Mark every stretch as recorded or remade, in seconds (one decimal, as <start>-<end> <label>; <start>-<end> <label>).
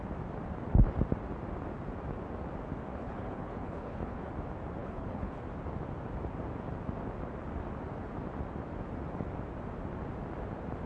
0.0-2.9 recorded; 2.9-4.3 remade; 4.3-4.8 recorded; 4.8-5.4 remade; 5.4-10.9 recorded